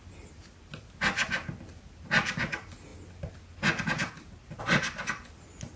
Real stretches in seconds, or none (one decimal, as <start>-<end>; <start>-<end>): 0.0-5.8